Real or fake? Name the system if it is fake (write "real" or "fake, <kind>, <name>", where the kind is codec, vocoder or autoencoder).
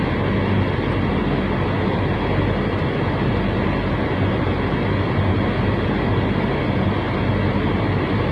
real